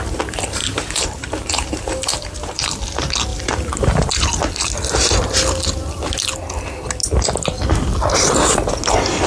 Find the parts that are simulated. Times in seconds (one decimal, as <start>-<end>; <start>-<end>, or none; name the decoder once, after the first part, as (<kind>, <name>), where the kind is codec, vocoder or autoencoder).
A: 0.6-2.8 (vocoder, BigVGAN v2); 3.3-4.1